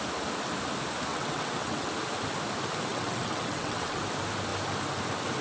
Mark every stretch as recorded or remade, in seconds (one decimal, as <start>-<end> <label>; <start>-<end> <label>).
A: 0.0-1.1 recorded; 1.1-1.9 remade; 1.9-2.9 recorded; 2.9-4.0 remade; 4.0-5.4 recorded